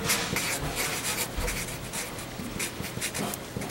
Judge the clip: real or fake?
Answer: real